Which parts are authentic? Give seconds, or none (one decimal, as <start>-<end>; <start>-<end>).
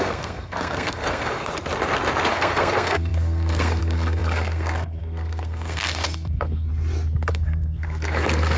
1.5-2.3; 6.7-7.3